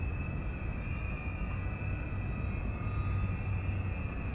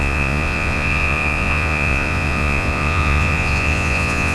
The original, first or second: first